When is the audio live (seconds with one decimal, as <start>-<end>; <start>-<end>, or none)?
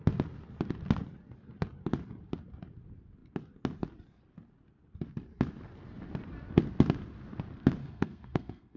0.0-7.8